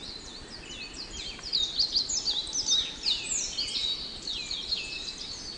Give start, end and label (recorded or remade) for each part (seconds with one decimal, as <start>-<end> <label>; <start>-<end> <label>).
0.0-5.6 recorded